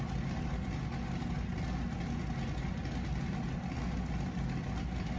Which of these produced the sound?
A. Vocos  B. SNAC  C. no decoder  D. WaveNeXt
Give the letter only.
C